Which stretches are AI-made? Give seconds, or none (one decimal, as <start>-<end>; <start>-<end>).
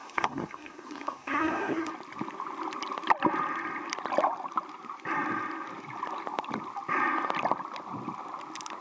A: 0.0-1.9